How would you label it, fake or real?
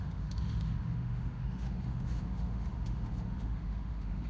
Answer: fake